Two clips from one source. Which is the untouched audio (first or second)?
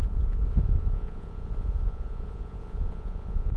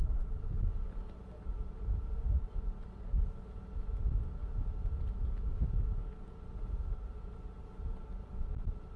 second